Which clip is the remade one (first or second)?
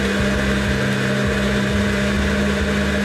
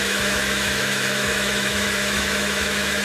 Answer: second